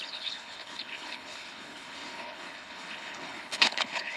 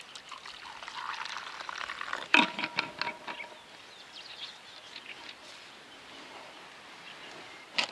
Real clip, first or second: second